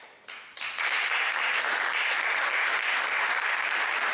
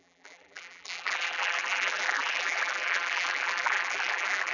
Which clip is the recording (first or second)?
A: first